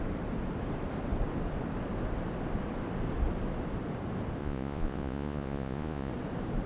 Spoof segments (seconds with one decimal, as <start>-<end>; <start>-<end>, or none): 4.4-6.1